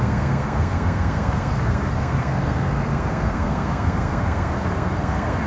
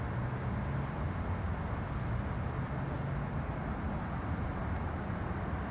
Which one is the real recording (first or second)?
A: second